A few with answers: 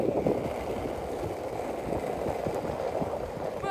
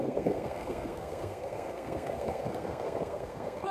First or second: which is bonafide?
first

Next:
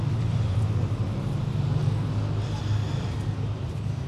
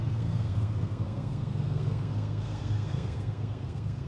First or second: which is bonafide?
first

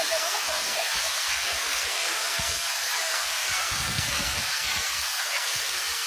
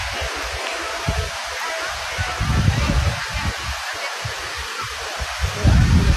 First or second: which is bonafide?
second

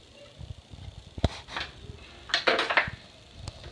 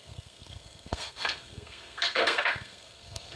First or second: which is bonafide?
first